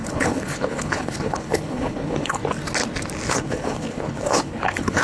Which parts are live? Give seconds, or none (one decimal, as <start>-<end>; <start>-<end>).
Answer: 2.4-3.3